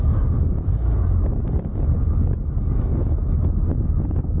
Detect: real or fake real